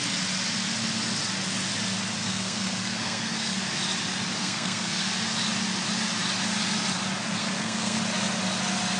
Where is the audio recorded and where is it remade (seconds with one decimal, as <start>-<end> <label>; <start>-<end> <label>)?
0.0-2.2 recorded; 2.2-3.6 remade; 3.6-4.4 recorded; 4.4-5.0 remade; 5.0-7.4 recorded; 7.4-8.0 remade; 8.0-9.0 recorded